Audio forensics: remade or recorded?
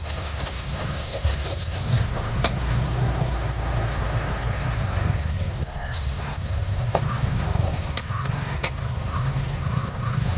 remade